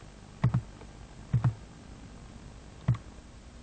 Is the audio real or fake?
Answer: real